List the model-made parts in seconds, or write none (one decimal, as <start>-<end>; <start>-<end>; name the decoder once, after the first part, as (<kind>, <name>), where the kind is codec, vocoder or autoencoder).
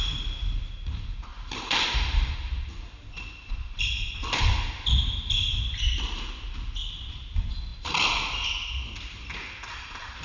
1.3-2.3 (vocoder, BigVGAN v2)